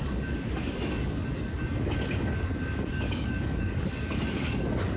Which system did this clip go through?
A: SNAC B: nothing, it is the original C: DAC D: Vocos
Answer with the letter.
C